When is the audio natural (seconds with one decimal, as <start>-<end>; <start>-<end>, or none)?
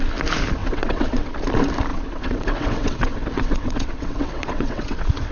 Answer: 0.0-0.6; 1.3-1.9